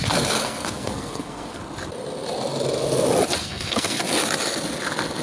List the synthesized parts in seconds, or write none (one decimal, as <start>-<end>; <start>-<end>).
0.0-1.6; 3.4-4.0